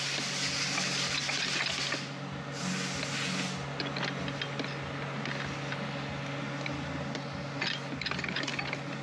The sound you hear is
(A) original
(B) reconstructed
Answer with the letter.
A